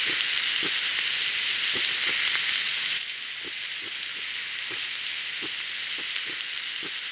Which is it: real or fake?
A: real